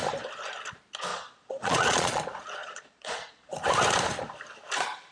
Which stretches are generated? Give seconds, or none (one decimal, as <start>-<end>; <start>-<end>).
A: 1.1-2.2; 2.6-3.5